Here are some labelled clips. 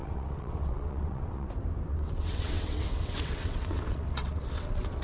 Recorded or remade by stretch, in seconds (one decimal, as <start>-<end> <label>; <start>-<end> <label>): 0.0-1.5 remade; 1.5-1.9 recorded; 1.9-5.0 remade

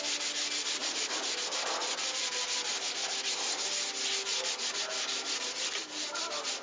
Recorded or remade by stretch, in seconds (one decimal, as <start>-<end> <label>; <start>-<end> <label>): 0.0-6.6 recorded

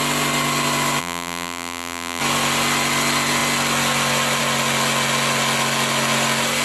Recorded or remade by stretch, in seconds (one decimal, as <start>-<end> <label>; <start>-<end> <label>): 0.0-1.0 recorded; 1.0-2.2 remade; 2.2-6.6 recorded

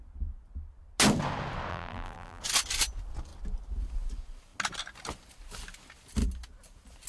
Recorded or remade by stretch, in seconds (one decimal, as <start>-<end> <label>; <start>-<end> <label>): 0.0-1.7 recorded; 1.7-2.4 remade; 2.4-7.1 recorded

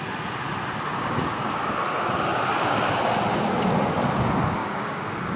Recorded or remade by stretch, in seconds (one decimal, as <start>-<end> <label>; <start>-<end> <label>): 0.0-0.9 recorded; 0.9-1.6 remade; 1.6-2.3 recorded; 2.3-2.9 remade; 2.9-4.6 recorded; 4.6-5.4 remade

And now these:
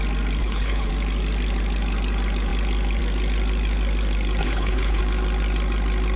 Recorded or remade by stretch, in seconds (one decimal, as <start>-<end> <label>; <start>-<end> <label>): 0.0-0.4 recorded; 0.4-0.9 remade; 0.9-4.4 recorded; 4.4-5.0 remade; 5.0-6.2 recorded

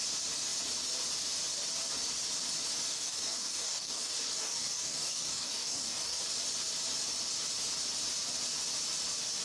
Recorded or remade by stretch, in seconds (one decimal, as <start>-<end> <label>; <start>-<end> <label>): 0.0-2.9 recorded; 2.9-6.2 remade; 6.2-9.4 recorded

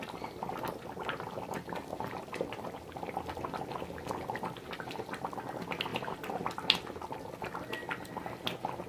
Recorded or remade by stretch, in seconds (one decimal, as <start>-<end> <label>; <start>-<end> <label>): 0.0-1.9 recorded; 1.9-3.8 remade; 3.8-5.9 recorded; 5.9-6.5 remade; 6.5-8.9 recorded